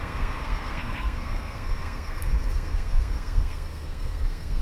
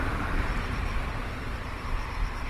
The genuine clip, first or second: second